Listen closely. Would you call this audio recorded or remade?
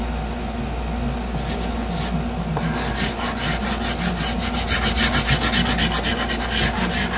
recorded